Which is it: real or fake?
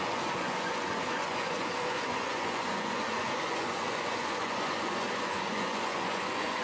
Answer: fake